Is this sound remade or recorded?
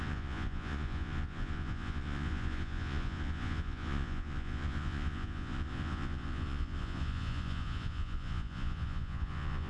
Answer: remade